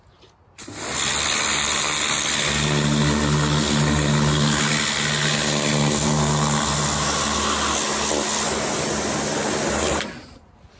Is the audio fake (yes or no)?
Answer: no